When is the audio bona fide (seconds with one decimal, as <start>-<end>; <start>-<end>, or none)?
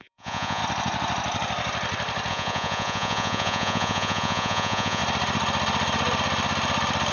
0.6-2.3; 5.0-7.1